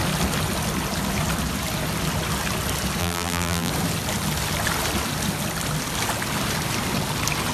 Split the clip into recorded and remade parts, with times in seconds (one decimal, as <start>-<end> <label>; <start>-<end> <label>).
0.0-3.0 recorded; 3.0-3.7 remade; 3.7-7.5 recorded